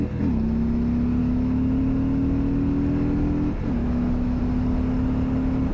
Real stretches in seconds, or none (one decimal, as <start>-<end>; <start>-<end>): 0.0-1.2; 1.8-3.8; 4.4-5.7